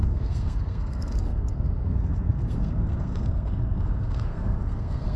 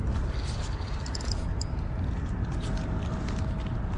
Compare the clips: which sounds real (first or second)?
second